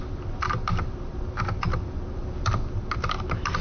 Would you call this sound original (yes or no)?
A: yes